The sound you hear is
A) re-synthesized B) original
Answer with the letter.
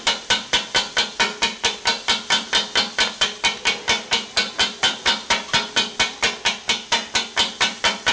B